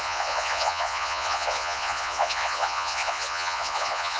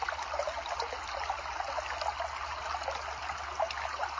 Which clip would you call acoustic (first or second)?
second